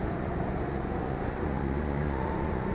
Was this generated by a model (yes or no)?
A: yes